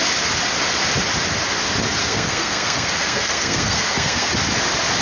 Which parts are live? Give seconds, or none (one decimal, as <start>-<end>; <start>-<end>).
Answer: 0.0-2.0; 4.3-5.0